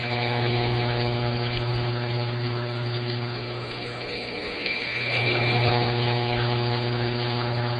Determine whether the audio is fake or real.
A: fake